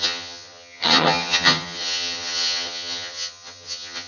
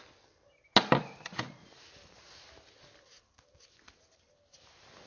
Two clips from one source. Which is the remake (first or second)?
first